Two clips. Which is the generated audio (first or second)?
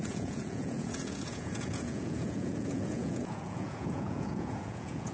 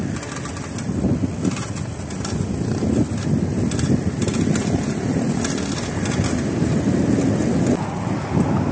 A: first